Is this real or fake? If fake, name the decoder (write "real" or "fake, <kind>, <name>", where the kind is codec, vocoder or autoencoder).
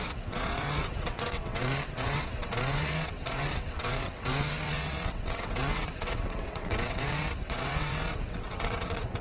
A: fake, vocoder, WaveNeXt